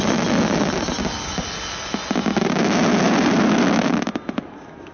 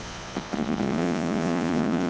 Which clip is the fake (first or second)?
second